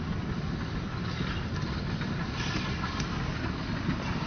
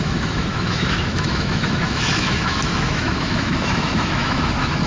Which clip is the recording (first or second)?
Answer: first